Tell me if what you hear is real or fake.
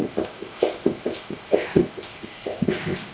fake